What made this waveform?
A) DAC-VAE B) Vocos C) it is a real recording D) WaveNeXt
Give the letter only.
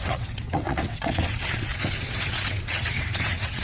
D